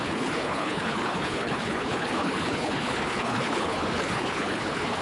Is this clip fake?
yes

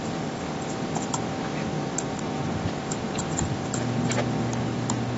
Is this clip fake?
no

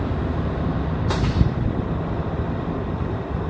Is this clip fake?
no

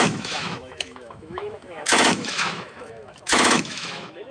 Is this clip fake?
yes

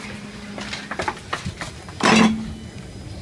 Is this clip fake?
no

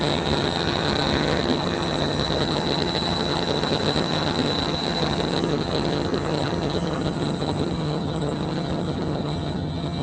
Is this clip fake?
yes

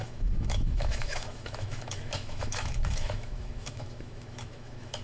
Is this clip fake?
yes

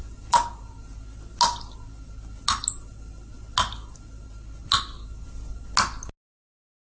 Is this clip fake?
no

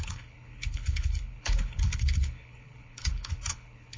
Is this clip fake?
yes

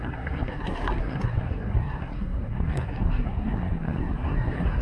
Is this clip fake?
yes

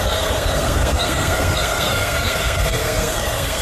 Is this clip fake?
yes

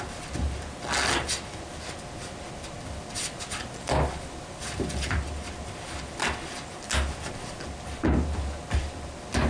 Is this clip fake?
no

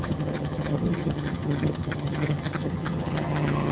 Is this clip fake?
yes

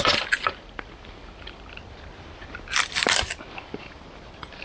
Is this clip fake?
no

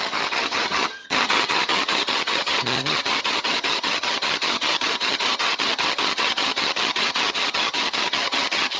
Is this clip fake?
yes